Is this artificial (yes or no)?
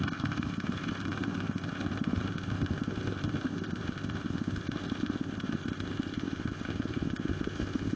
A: yes